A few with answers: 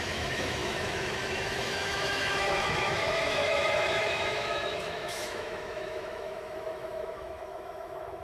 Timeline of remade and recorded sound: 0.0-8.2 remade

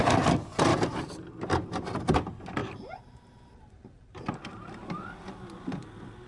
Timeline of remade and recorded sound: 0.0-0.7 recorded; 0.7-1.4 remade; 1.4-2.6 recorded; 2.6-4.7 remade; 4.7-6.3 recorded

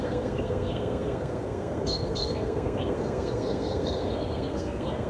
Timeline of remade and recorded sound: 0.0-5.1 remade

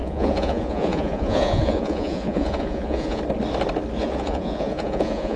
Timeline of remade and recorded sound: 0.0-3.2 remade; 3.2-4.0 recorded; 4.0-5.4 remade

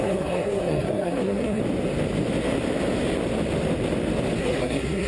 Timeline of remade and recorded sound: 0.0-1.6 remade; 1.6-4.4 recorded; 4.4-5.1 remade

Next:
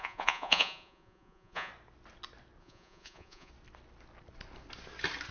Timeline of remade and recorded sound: 0.0-1.7 remade; 1.7-2.6 recorded; 2.6-3.5 remade; 3.5-5.3 recorded